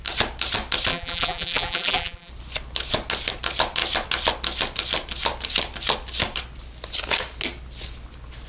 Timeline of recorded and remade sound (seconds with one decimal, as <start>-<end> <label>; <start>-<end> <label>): 0.0-0.9 recorded; 0.9-2.3 remade; 2.3-8.5 recorded